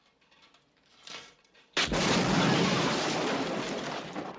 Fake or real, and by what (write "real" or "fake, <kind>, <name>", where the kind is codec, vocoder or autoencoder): real